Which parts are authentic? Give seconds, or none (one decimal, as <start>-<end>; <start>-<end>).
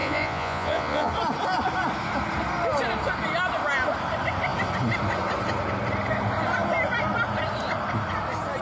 1.1-8.6